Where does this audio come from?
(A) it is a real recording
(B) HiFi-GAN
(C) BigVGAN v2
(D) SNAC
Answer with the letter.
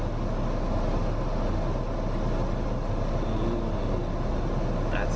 A